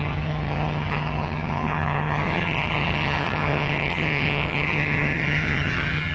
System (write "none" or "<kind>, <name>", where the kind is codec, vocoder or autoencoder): vocoder, HiFi-GAN